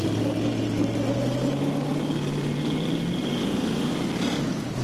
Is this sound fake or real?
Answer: real